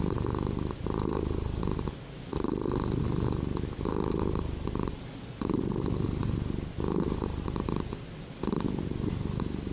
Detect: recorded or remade recorded